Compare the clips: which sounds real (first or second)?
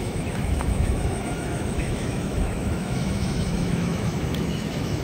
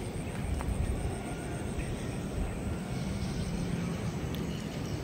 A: second